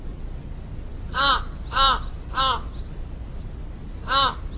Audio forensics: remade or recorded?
recorded